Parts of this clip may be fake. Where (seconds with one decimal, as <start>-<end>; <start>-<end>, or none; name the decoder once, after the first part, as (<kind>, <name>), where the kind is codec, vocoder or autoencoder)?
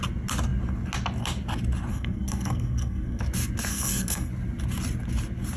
1.9-3.2 (codec, SNAC); 3.7-4.3